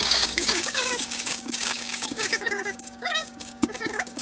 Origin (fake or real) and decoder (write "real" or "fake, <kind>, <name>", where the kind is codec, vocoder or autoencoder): fake, codec, DAC